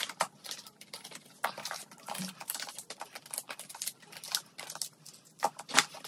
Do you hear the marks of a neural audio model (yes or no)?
no